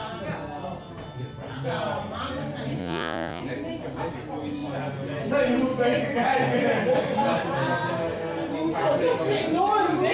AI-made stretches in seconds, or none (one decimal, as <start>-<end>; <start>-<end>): 2.8-3.4